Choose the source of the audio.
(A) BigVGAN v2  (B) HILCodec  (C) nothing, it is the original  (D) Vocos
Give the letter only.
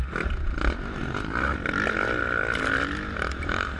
C